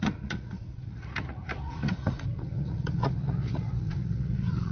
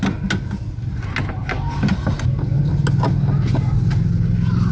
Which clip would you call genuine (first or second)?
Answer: second